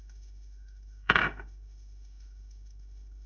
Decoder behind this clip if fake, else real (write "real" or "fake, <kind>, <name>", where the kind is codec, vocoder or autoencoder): fake, autoencoder, DAC-VAE